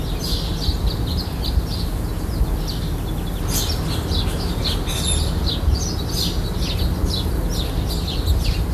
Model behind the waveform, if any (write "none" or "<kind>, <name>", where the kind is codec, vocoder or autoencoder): none